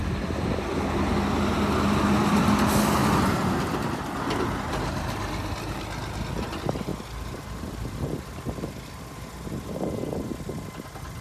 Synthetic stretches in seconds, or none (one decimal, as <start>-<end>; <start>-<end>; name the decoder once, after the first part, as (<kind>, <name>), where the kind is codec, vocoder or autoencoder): none